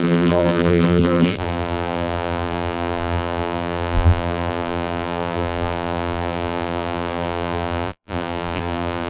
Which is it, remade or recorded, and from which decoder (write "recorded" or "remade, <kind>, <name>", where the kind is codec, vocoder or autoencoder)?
remade, vocoder, BigVGAN v2